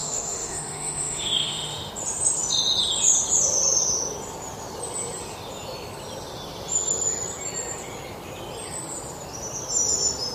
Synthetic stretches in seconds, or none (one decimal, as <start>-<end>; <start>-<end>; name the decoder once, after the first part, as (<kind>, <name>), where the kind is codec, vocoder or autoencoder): 0.0-1.9 (autoencoder, DAC-VAE)

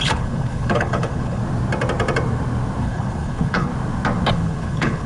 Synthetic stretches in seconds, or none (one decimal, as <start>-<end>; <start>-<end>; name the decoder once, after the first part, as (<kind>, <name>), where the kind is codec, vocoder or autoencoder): 0.0-1.4 (codec, HILCodec); 2.8-3.7; 4.3-5.1

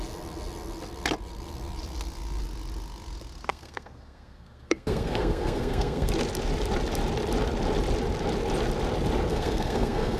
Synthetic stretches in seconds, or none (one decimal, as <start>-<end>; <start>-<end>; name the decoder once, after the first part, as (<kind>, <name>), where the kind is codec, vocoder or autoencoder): 3.5-6.1 (codec, SNAC); 9.3-10.2

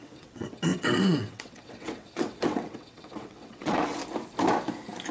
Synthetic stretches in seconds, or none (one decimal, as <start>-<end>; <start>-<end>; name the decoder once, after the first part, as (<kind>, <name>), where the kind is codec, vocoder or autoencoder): 0.0-4.0 (vocoder, WaveNeXt)

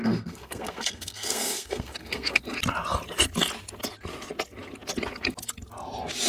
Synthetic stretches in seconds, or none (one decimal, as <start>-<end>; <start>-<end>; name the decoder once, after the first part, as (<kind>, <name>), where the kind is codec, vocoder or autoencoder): 0.0-2.4 (codec, SNAC)

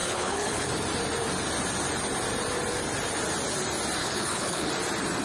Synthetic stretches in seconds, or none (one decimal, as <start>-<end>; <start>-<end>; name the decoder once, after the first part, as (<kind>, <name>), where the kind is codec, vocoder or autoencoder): 0.0-0.7 (codec, HILCodec); 4.0-4.7

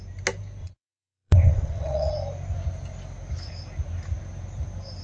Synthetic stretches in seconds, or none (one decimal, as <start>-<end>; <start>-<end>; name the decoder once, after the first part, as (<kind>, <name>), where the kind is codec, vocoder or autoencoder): 0.6-2.1 (vocoder, WaveNeXt)